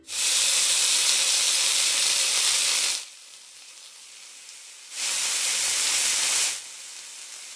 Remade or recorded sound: recorded